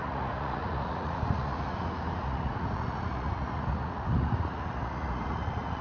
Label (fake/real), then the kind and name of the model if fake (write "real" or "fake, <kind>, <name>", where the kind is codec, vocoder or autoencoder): fake, vocoder, Vocos